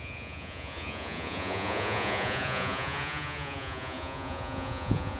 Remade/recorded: remade